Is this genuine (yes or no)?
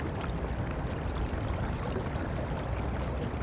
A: yes